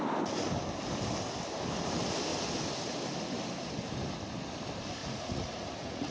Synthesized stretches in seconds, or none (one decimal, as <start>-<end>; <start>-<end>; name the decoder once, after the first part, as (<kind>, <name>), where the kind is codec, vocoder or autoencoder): 5.0-6.1 (vocoder, Vocos)